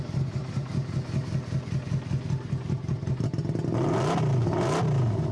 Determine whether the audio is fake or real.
real